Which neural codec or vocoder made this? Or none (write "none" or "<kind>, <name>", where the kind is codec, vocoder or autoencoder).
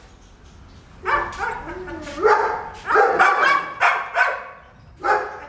none